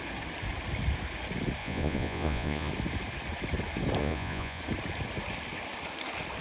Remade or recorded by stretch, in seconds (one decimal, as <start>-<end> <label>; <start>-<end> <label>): 0.0-1.6 recorded; 1.6-2.7 remade; 2.7-4.0 recorded; 4.0-4.6 remade; 4.6-6.4 recorded